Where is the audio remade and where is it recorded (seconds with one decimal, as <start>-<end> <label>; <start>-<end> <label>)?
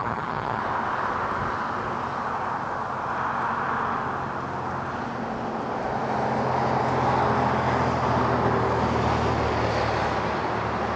0.0-0.6 remade; 0.6-11.0 recorded